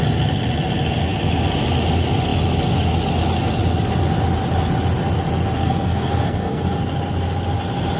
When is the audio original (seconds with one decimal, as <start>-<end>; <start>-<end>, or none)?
0.0-5.6; 6.8-8.0